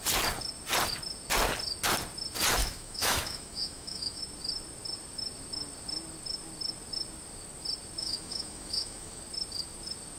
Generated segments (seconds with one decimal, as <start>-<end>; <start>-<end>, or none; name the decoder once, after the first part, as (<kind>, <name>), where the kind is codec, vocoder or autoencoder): 2.6-4.2 (autoencoder, DAC-VAE); 8.0-9.2